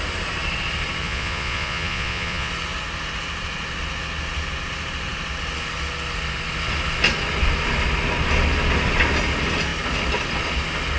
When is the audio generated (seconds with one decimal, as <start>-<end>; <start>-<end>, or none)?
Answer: 1.0-2.5